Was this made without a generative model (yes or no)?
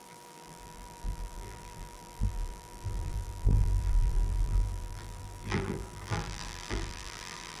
no